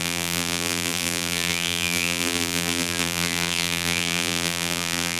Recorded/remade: remade